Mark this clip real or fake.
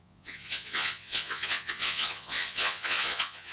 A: fake